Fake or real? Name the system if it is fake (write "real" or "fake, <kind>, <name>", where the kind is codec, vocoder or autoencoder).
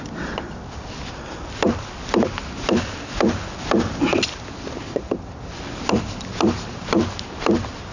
real